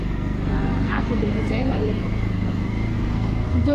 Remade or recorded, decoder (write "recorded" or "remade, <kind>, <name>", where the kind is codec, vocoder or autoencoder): remade, codec, SNAC